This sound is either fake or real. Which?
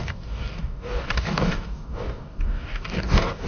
fake